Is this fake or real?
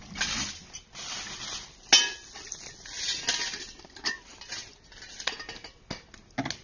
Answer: real